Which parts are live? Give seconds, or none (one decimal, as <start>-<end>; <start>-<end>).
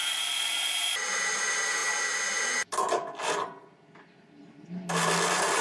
0.0-5.6